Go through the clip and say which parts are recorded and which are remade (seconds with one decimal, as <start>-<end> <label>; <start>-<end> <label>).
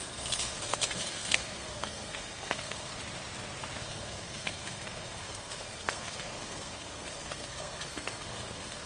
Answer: 0.0-2.9 remade; 2.9-3.8 recorded; 3.8-8.9 remade